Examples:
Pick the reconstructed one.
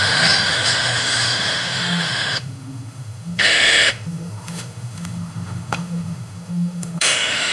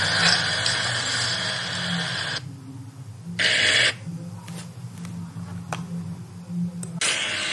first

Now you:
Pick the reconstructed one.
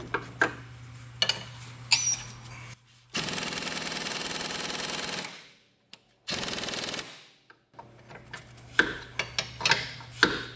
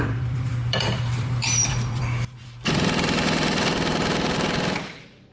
second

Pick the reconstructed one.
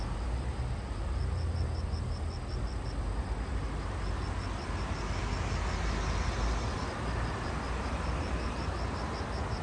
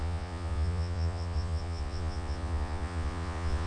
second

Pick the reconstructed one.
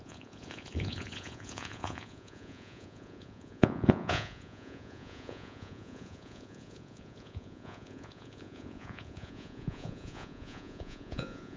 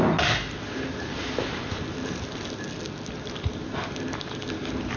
first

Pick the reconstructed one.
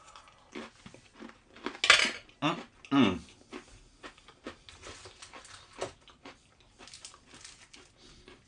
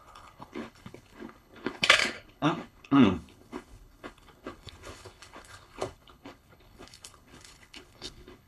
second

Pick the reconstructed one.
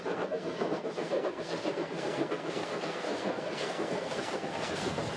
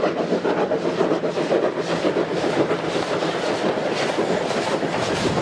first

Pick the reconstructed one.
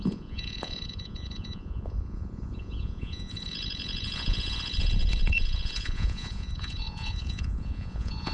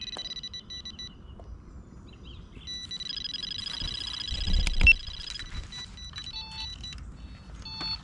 first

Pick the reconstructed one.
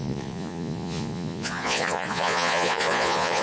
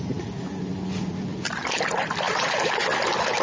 first